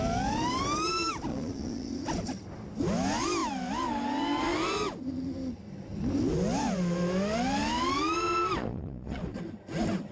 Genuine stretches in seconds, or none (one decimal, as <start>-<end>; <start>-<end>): 0.0-1.3; 1.9-8.6; 9.2-10.1